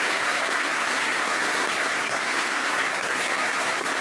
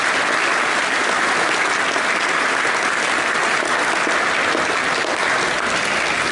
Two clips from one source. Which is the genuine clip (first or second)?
second